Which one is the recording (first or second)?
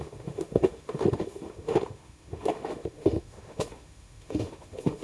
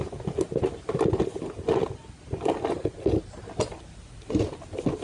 second